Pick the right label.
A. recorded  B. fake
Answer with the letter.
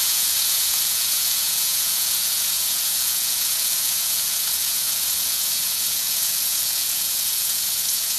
B